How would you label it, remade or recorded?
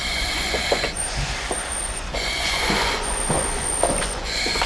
remade